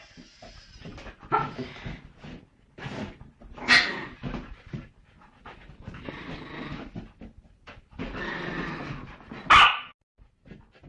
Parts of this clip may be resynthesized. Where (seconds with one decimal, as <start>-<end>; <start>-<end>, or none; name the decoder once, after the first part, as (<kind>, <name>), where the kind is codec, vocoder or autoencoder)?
none